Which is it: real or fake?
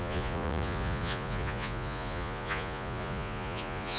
fake